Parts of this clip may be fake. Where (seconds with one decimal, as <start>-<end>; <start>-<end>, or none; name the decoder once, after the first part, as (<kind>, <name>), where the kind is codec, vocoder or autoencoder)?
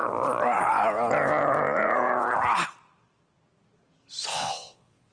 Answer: 4.3-5.1 (vocoder, WaveNeXt)